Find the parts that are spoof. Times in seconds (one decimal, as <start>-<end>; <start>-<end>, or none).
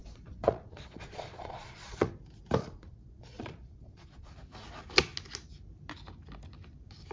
0.0-2.1; 2.6-4.3